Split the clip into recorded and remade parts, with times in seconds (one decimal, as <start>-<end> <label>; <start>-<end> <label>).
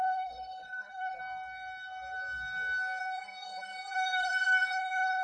0.0-1.2 remade; 1.2-3.0 recorded; 3.0-5.2 remade